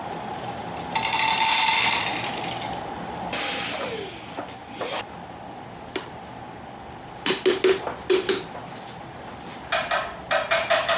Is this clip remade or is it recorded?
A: recorded